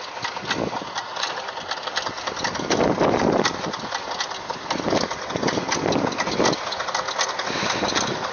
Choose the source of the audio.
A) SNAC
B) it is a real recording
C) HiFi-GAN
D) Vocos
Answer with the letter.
B